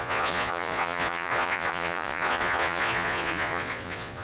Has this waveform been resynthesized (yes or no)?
yes